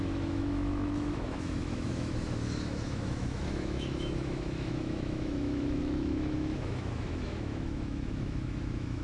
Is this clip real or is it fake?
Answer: fake